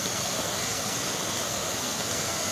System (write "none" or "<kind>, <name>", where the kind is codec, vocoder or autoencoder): codec, SNAC